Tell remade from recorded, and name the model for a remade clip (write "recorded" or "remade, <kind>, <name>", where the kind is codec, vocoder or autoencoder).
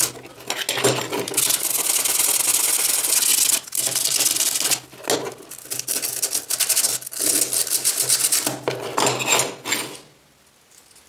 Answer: recorded